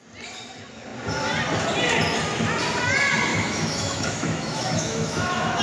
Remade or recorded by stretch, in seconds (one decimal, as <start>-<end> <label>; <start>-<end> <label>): 0.0-3.3 recorded; 3.3-5.6 remade